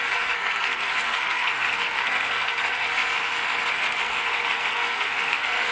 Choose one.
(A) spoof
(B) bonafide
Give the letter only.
A